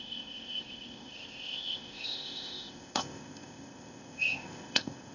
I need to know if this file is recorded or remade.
remade